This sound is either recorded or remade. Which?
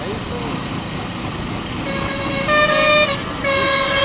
recorded